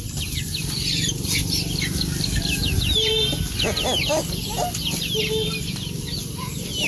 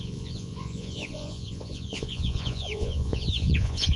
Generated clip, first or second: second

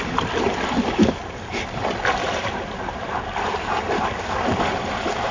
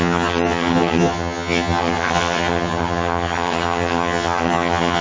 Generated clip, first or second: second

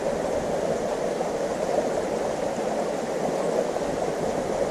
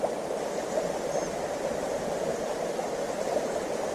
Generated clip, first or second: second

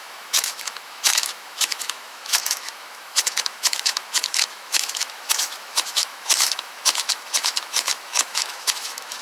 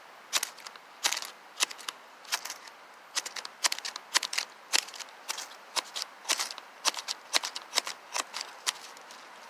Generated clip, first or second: first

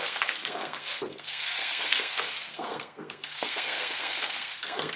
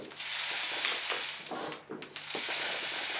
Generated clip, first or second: first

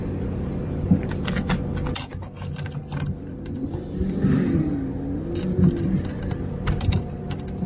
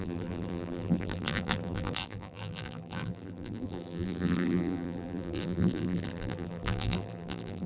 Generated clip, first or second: second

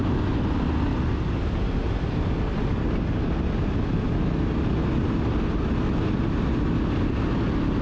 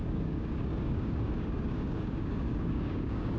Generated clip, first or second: second